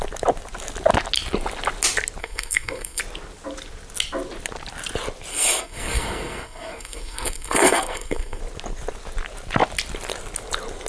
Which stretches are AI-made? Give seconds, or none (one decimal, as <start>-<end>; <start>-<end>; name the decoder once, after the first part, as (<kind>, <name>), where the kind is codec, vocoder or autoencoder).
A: 2.2-3.0 (codec, SNAC); 5.3-8.4